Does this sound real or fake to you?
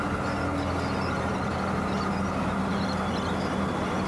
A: real